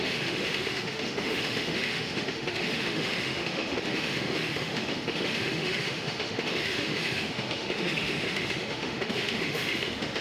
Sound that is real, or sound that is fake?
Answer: fake